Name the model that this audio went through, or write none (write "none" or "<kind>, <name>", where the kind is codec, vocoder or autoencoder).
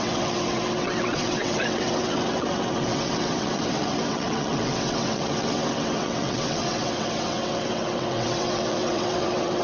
vocoder, WaveNeXt